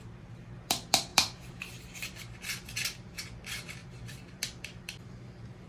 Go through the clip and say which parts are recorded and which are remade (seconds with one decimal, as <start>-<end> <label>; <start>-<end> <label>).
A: 0.0-5.7 remade

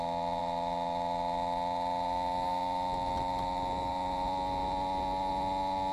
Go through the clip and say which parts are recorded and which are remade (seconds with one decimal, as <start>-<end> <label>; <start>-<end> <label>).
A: 0.0-5.9 recorded